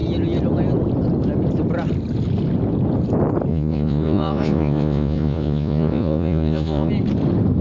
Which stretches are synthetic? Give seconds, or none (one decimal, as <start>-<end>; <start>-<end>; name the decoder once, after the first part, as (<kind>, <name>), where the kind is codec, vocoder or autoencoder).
3.5-6.9 (vocoder, Vocos)